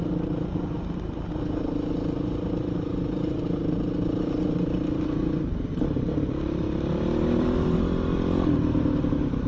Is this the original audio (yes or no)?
yes